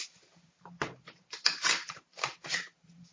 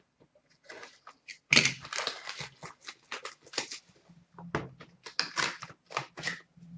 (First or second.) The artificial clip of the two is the first